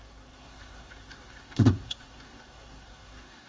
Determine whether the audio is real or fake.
fake